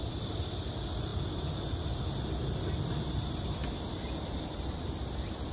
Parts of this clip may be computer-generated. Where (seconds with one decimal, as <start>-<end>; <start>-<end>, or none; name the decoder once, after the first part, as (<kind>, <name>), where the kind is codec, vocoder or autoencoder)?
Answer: none